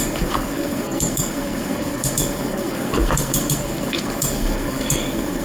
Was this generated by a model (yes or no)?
yes